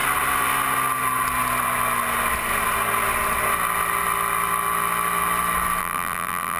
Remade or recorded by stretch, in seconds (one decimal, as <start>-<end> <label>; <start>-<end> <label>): 0.0-5.8 recorded; 5.8-6.6 remade